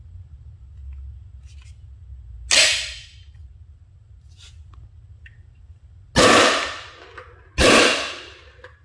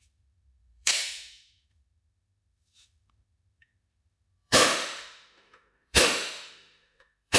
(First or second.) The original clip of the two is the first